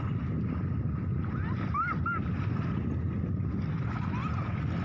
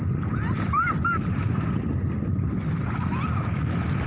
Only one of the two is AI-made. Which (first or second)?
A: second